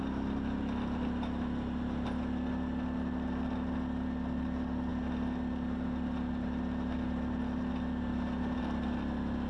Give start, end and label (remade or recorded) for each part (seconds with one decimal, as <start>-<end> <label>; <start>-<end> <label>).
0.0-9.5 recorded